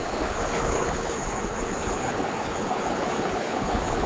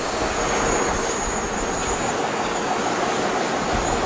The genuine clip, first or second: second